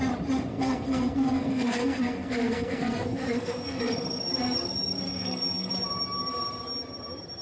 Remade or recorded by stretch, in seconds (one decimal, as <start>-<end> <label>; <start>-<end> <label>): 0.0-0.5 recorded; 0.5-4.2 remade; 4.2-5.1 recorded; 5.1-5.7 remade; 5.7-7.4 recorded